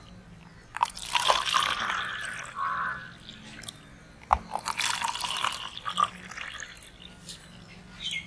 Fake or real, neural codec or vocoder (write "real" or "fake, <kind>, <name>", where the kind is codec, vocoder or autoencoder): real